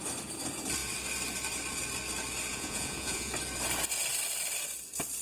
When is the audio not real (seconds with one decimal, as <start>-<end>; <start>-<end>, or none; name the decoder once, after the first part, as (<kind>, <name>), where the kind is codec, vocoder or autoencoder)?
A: 2.5-3.3 (vocoder, Vocos)